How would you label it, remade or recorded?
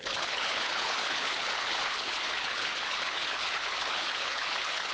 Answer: remade